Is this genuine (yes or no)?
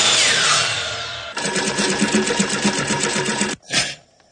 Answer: no